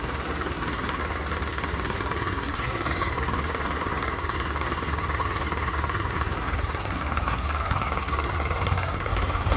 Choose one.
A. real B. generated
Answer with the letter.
B